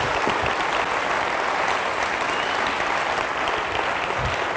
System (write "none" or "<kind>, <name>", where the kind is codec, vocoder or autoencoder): none